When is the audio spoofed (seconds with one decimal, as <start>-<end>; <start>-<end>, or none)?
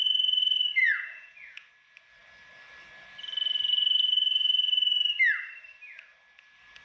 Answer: 0.8-1.7